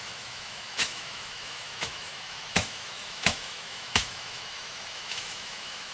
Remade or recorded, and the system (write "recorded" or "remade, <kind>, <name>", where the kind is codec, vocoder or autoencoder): remade, autoencoder, DAC-VAE